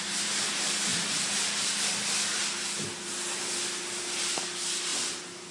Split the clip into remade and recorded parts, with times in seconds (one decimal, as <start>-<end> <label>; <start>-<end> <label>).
0.0-5.5 recorded